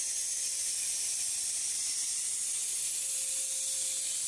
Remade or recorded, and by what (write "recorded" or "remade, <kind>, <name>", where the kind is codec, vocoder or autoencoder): recorded